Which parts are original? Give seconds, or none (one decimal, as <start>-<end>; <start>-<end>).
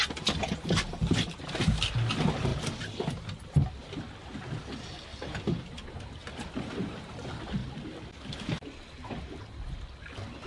0.0-10.5